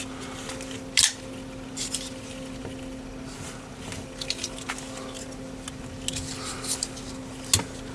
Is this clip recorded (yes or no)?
yes